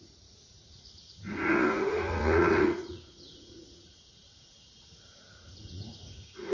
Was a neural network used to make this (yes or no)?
yes